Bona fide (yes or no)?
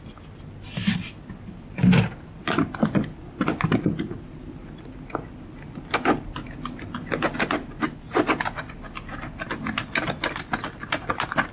yes